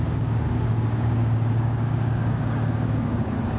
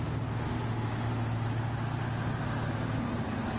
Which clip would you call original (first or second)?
second